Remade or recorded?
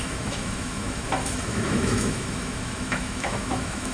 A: remade